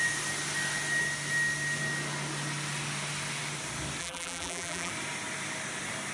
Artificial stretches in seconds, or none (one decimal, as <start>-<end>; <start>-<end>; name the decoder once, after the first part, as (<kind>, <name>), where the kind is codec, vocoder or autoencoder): 4.0-4.9 (vocoder, BigVGAN v2)